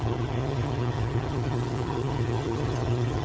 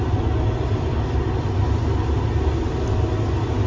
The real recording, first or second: second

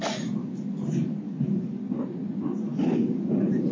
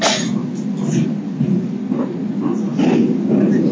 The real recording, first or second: second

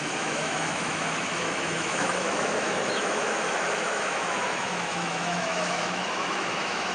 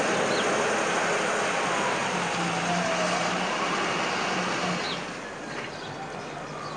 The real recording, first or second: second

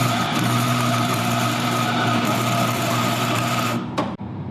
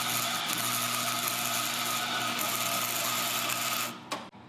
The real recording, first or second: second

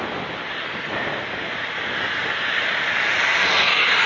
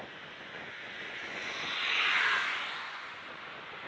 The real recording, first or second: first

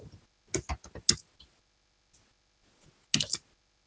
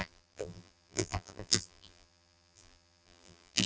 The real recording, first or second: first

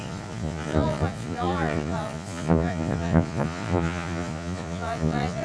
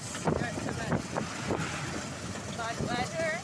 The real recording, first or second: second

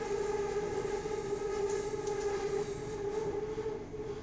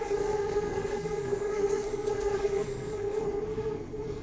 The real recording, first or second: first